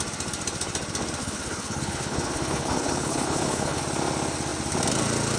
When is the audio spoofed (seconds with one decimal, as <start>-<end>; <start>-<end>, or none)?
1.2-3.8